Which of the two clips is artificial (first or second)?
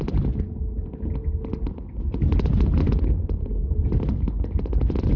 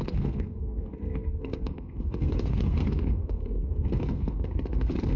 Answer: second